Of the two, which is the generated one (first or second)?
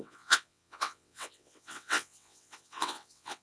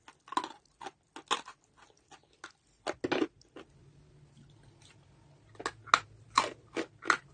first